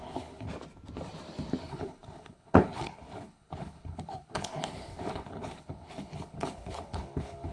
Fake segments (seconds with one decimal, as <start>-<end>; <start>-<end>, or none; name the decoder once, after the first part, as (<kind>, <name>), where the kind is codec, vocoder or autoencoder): 0.0-0.5 (codec, HILCodec); 1.6-7.5